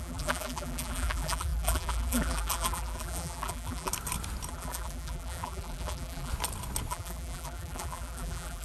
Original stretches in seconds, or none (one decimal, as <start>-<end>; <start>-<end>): 3.9-4.5; 6.3-6.9